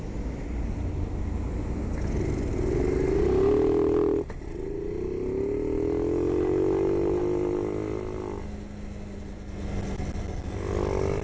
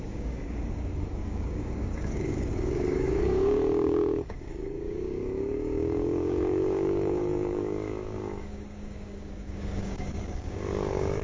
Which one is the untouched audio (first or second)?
first